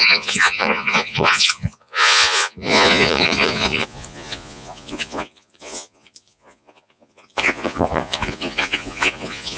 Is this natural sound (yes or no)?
no